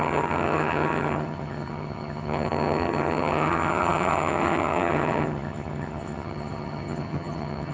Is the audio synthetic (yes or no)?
yes